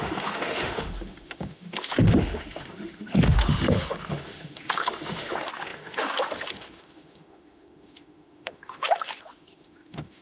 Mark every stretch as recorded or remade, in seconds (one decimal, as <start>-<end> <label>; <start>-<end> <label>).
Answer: 0.0-10.2 remade

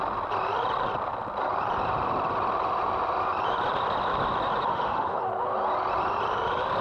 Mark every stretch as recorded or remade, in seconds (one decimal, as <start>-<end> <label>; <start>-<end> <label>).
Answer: 0.0-4.7 recorded; 4.7-5.2 remade; 5.2-6.8 recorded